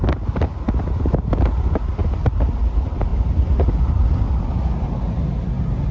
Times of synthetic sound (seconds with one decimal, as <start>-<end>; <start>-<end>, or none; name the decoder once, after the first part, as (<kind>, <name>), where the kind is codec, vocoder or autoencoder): none